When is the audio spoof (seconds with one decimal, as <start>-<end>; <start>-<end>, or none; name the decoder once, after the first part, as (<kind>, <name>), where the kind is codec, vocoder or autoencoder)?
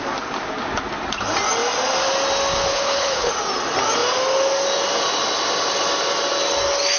2.7-3.3 (codec, HILCodec)